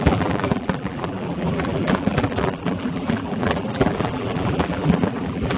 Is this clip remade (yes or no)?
yes